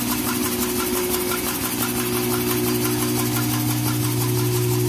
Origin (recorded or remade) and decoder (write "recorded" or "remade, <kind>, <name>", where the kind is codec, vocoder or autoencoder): recorded